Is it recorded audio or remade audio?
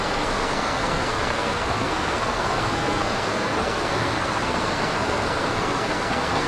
remade